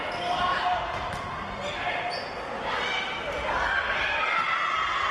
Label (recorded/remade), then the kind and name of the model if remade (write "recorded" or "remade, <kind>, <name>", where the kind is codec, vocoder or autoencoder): recorded